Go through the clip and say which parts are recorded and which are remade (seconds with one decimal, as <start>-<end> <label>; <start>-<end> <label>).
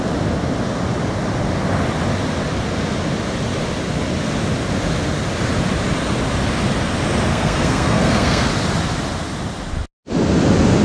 0.0-7.3 recorded; 7.3-8.5 remade; 8.5-10.8 recorded